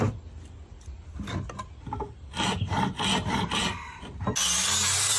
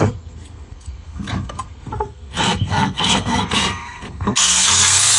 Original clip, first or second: first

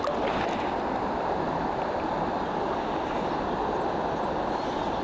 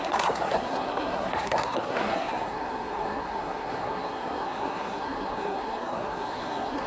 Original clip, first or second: first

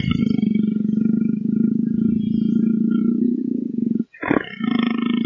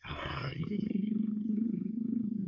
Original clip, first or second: first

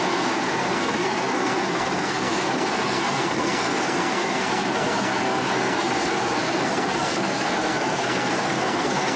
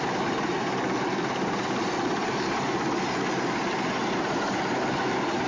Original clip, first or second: second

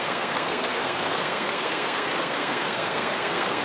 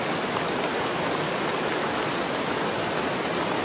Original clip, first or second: second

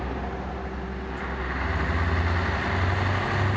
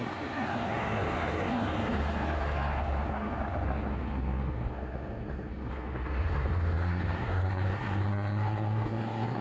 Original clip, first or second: first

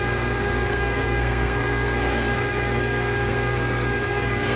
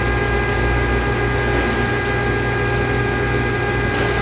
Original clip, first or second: second